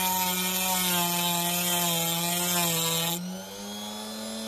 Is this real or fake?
real